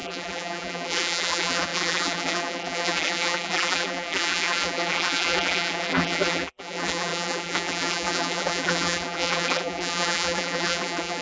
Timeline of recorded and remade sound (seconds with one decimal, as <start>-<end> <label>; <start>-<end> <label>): 0.0-11.2 remade